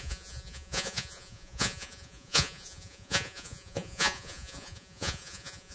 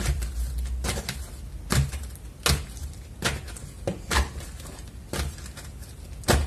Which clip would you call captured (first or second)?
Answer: second